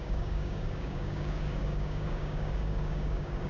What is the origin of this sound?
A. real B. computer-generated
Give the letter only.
B